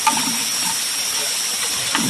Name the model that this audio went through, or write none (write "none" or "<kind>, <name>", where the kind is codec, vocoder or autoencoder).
none